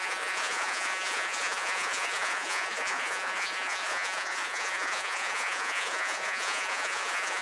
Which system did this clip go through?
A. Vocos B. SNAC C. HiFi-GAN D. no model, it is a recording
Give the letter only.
A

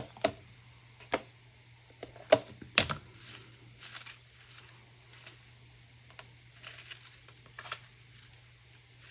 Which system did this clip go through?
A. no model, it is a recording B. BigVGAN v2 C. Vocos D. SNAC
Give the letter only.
A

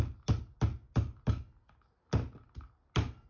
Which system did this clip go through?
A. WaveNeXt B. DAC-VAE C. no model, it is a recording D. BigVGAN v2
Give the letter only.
C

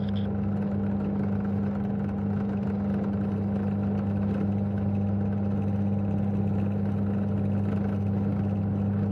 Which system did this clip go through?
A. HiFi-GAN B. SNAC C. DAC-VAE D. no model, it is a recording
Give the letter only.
D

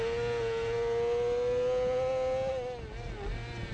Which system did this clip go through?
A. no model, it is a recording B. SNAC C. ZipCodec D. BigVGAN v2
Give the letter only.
A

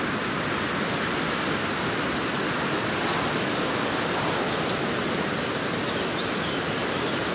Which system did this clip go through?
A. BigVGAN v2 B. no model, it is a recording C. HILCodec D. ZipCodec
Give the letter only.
B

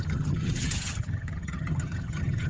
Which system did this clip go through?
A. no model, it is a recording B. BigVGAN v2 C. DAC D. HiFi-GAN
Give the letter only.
D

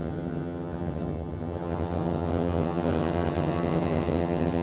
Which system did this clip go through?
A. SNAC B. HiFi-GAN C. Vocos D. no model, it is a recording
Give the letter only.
B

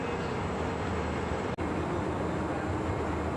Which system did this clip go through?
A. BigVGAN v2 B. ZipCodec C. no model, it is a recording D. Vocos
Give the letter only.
C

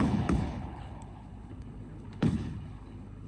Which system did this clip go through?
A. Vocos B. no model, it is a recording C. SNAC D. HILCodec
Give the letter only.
D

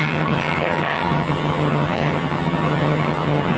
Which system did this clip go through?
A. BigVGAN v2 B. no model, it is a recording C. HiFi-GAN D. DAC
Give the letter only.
C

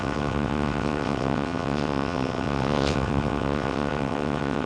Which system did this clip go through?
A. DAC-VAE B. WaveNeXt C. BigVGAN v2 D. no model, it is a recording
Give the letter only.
B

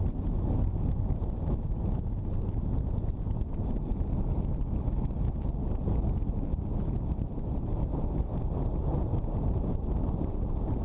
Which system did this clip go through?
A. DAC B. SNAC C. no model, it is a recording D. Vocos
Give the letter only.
C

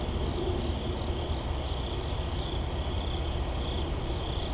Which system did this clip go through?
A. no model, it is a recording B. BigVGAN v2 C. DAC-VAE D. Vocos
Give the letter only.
A